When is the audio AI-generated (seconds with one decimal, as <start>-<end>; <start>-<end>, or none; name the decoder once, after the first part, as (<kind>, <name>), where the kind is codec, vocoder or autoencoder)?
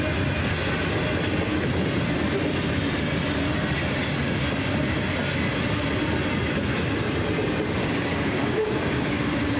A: 7.8-9.1 (codec, DAC)